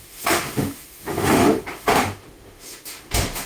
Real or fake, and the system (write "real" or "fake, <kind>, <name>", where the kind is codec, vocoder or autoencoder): fake, autoencoder, DAC-VAE